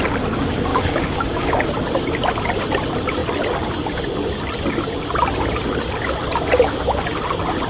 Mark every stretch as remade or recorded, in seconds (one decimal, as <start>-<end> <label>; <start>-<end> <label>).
0.0-0.7 recorded; 0.7-1.6 remade; 1.6-7.7 recorded